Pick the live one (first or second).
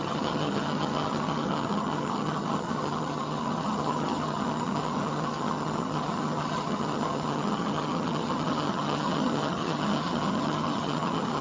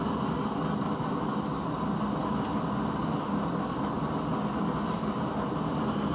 second